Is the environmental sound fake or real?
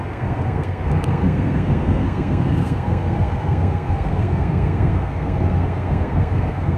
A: fake